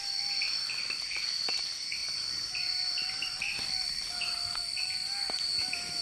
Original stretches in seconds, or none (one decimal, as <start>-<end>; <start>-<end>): 0.0-6.0